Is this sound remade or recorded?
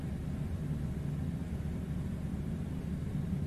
recorded